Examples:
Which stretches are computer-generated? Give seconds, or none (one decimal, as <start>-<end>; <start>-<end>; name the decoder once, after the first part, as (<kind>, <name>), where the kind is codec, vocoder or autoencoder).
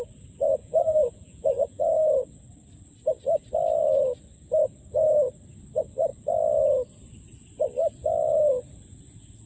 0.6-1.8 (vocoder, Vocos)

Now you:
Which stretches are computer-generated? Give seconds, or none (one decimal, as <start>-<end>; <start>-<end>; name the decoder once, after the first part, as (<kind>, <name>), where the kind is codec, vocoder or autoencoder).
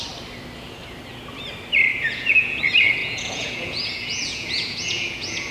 1.9-2.6 (vocoder, Vocos); 3.0-5.5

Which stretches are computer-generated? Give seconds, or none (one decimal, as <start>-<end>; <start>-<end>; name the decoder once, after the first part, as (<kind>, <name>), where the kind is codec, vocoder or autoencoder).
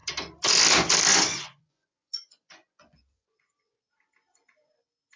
1.1-3.8 (vocoder, Vocos)